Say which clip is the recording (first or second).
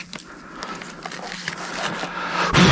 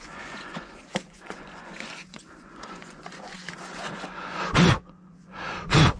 first